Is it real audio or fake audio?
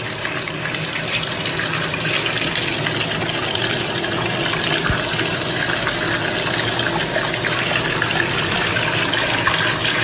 real